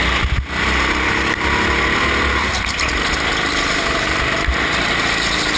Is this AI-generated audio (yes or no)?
no